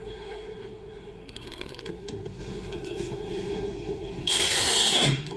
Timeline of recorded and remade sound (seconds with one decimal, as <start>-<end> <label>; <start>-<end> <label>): 0.0-5.4 remade